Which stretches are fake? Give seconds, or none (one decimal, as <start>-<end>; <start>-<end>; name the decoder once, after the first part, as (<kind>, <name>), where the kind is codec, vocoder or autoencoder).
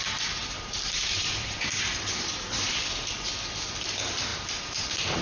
0.4-2.8 (vocoder, BigVGAN v2); 4.3-5.2